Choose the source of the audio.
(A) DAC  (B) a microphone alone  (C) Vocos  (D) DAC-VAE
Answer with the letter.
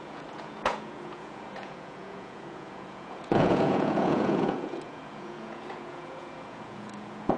C